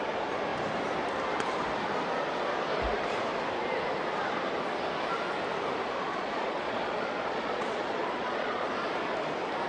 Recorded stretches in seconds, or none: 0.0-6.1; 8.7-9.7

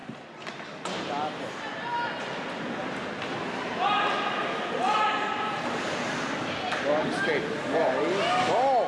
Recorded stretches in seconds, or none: 0.0-8.9

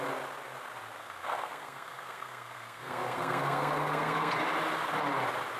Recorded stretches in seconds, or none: 0.0-1.0; 4.3-5.6

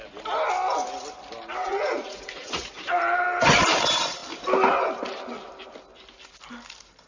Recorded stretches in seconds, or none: 0.0-1.6; 3.0-7.1

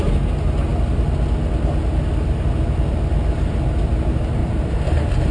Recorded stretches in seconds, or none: 0.0-4.4

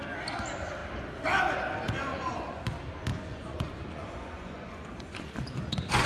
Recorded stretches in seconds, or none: 0.0-2.1; 2.6-3.1